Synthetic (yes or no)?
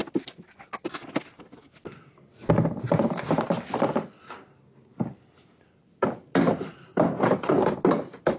no